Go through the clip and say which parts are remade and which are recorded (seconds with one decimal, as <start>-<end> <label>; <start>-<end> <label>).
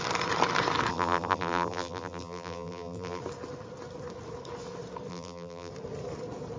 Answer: 0.0-0.9 recorded; 0.9-3.2 remade; 3.2-5.1 recorded; 5.1-5.7 remade; 5.7-6.6 recorded